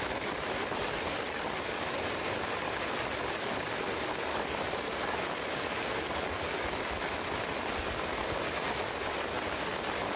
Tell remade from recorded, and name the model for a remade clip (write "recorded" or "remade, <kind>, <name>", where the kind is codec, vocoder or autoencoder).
recorded